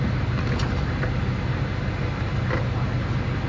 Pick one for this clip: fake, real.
real